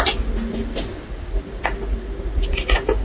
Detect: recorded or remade recorded